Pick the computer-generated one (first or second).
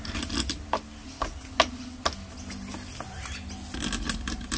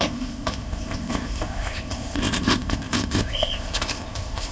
second